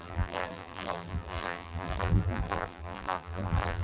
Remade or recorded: remade